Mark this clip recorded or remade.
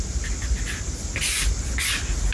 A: recorded